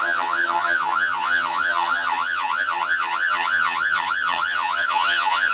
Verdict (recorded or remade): remade